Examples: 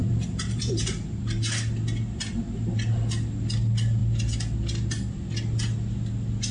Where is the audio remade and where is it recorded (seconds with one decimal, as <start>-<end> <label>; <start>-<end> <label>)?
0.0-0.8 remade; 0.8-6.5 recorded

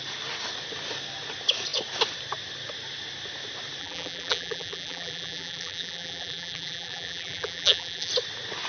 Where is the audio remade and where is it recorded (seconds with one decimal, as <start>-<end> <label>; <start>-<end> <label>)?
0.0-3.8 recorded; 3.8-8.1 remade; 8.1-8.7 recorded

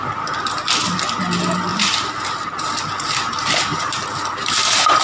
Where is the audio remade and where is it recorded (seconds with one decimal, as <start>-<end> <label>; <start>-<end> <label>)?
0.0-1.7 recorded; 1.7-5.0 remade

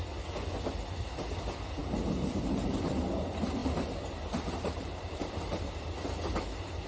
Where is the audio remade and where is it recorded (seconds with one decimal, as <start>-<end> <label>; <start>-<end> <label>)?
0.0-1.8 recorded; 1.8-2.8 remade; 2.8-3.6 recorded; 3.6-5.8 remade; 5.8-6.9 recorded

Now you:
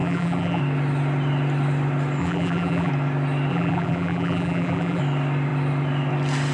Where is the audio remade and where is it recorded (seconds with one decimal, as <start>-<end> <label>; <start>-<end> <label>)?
0.0-0.6 remade; 0.6-2.2 recorded; 2.2-2.9 remade; 2.9-3.5 recorded; 3.5-5.0 remade; 5.0-6.5 recorded

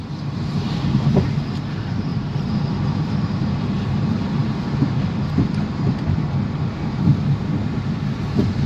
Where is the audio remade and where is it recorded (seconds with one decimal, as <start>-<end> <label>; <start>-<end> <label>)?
0.0-8.7 remade